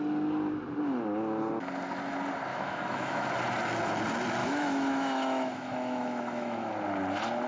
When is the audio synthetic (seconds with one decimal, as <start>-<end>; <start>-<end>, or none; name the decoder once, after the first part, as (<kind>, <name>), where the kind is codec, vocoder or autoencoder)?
2.5-3.3 (autoencoder, DAC-VAE); 4.4-6.7